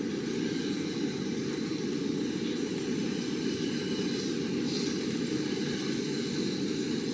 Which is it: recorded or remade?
recorded